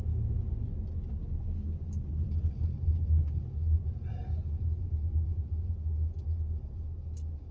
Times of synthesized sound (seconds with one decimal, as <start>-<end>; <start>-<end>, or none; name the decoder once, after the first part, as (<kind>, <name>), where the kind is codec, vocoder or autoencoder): none

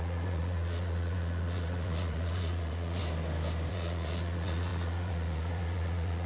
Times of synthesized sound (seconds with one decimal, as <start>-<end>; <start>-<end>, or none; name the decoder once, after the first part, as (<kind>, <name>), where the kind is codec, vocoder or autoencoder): 0.0-3.0 (vocoder, Vocos); 3.7-6.3

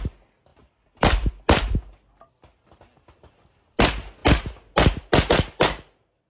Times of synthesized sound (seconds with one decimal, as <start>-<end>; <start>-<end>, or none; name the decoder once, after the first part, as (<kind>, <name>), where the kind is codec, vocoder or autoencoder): 0.5-1.3 (vocoder, BigVGAN v2)

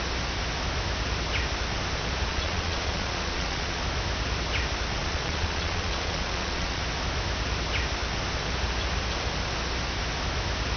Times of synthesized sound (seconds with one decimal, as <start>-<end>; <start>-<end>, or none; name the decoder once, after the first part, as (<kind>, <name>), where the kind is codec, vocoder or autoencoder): 2.3-3.8 (vocoder, Vocos); 5.0-6.8